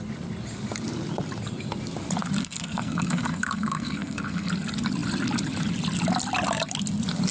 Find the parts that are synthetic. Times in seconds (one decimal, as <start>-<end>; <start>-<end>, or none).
2.4-4.5